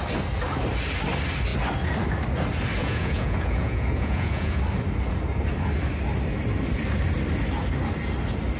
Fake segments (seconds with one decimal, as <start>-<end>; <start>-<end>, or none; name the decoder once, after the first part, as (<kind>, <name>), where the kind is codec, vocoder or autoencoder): 2.8-4.6 (vocoder, Vocos)